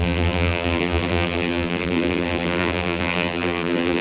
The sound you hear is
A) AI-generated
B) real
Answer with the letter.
A